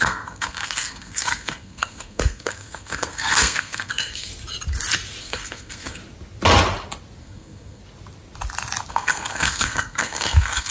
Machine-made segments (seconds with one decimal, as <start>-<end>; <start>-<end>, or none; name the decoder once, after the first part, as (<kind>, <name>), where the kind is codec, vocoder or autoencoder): 0.0-4.3 (codec, SNAC); 5.2-6.0; 7.2-7.8; 8.9-10.7